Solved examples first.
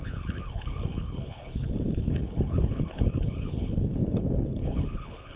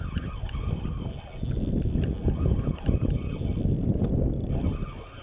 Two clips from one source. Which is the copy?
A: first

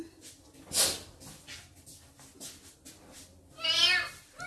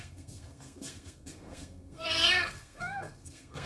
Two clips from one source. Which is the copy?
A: second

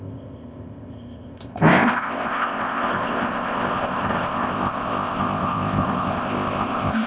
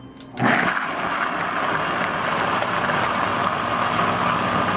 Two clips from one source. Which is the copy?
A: first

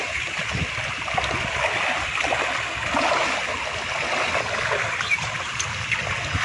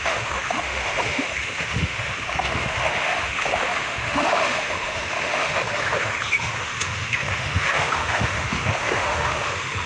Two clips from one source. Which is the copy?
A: second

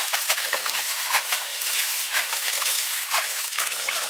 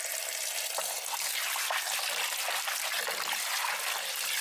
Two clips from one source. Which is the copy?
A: first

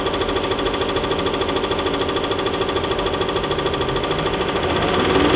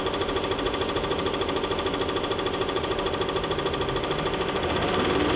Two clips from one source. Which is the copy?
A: second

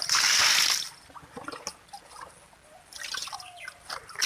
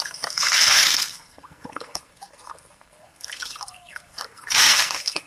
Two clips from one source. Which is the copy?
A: second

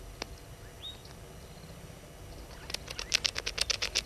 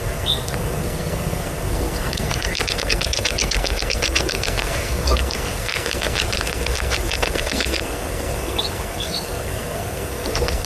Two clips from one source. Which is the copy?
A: second